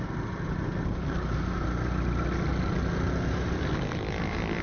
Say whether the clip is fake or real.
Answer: real